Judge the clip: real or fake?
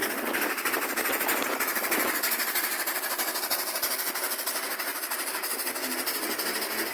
real